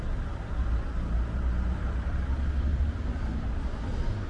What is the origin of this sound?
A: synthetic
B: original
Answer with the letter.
B